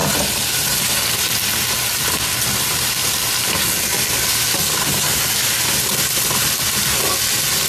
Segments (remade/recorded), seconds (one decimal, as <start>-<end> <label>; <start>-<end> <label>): 0.0-7.7 recorded